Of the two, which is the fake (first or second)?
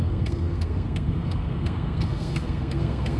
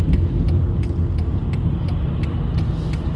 first